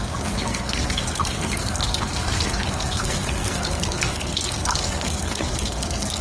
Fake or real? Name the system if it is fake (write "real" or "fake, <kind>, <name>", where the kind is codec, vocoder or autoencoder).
fake, codec, SNAC